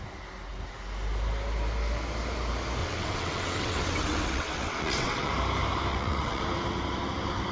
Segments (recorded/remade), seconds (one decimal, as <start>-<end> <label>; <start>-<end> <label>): 0.0-2.8 recorded; 2.8-5.3 remade; 5.3-5.9 recorded; 5.9-6.4 remade; 6.4-7.5 recorded